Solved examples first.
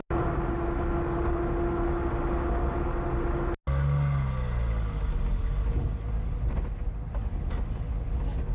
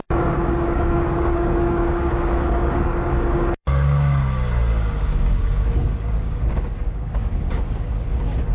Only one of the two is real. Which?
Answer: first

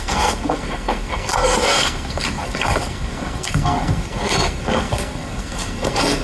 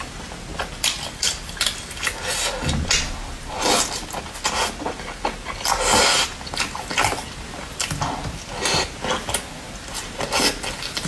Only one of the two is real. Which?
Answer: second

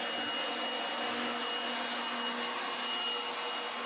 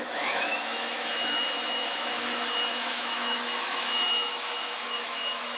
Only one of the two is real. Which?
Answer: first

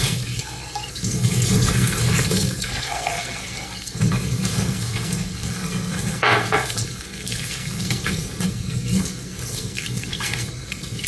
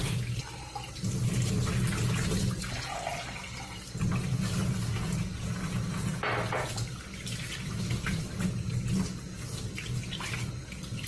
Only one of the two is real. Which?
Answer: second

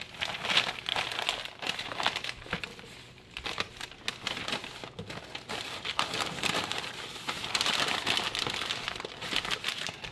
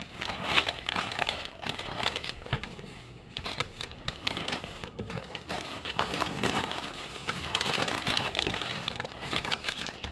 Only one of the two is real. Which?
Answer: first